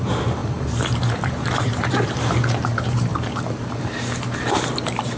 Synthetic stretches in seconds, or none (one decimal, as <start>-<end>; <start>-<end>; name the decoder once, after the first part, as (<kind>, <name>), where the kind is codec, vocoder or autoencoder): 0.0-0.4 (vocoder, BigVGAN v2); 1.0-3.1; 3.8-5.2